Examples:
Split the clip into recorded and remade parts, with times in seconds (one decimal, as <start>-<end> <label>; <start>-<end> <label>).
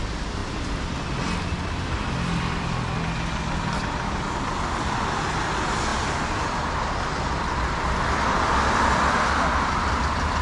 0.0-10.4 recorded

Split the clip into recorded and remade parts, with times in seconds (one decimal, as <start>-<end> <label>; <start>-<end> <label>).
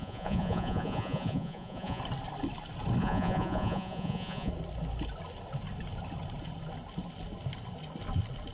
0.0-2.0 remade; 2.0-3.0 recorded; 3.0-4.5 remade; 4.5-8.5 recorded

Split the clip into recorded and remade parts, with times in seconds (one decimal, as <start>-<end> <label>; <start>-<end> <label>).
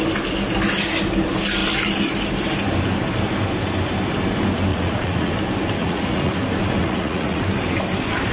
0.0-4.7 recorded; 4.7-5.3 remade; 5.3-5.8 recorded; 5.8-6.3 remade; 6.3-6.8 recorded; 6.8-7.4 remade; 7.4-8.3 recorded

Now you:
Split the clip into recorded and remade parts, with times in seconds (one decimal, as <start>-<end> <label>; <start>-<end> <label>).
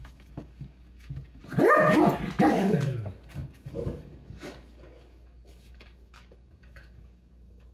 0.0-1.4 remade; 1.4-2.5 recorded; 2.5-7.7 remade